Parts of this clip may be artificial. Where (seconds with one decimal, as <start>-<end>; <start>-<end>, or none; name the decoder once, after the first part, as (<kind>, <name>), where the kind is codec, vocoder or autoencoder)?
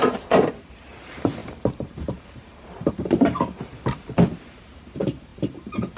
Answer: 0.0-3.7 (vocoder, BigVGAN v2); 4.5-6.0